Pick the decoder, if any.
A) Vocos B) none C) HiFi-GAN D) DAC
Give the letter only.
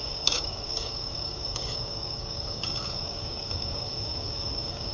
D